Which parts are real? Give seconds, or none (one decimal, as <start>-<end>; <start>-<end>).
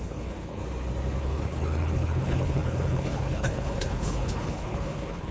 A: 0.6-1.2